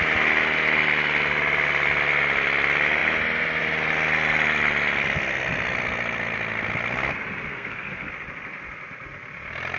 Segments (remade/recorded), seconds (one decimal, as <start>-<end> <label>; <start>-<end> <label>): 0.0-7.5 recorded; 7.5-8.1 remade; 8.1-9.8 recorded